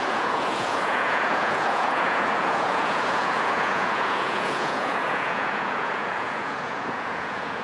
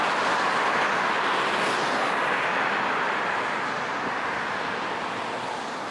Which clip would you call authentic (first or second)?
second